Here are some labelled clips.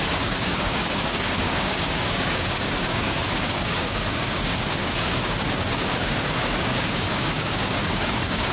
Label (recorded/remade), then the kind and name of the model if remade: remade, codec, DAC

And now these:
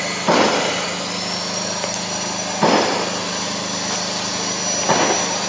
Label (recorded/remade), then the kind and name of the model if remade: recorded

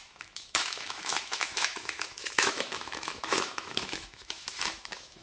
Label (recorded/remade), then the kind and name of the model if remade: remade, autoencoder, DAC-VAE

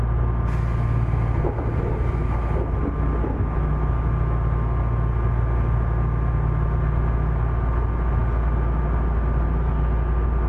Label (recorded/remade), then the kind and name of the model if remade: recorded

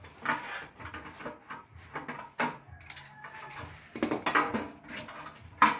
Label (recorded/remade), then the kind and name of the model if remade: recorded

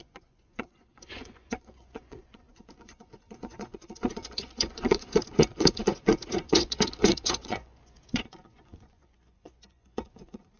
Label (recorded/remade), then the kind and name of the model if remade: remade, vocoder, Vocos